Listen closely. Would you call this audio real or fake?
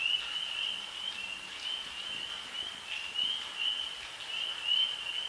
real